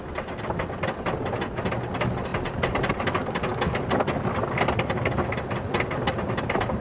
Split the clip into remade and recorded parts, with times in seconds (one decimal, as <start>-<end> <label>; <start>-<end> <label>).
0.0-6.8 recorded